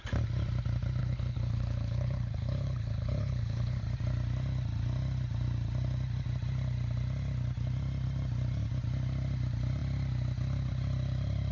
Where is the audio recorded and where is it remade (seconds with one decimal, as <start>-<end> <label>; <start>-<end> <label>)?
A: 0.0-1.0 recorded; 1.0-3.8 remade; 3.8-11.5 recorded